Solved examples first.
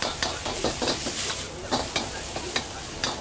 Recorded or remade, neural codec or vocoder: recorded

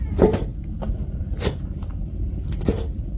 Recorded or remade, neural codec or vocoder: remade, vocoder, BigVGAN v2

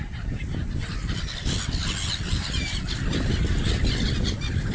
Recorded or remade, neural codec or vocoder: recorded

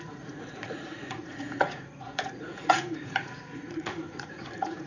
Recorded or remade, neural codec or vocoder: remade, vocoder, Vocos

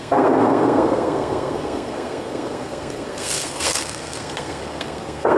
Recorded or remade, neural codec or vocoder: remade, codec, SNAC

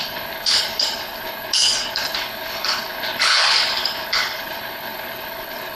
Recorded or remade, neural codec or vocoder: remade, codec, HILCodec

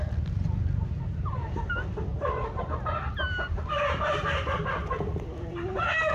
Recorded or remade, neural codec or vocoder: recorded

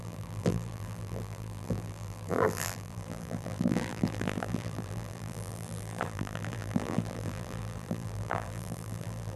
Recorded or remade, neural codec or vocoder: remade, vocoder, BigVGAN v2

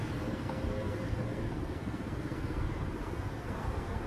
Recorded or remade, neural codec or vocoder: remade, codec, SNAC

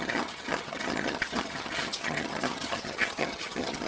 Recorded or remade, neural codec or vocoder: remade, vocoder, HiFi-GAN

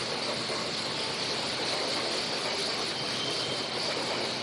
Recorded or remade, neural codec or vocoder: recorded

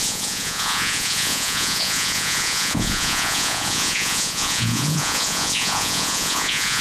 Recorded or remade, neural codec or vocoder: remade, vocoder, Vocos